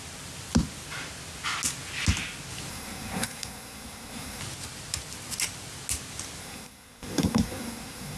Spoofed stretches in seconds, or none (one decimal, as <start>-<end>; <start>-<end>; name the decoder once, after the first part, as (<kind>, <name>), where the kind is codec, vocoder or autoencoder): 2.7-4.4 (codec, SNAC); 6.4-8.2